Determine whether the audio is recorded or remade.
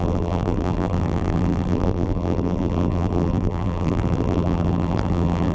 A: remade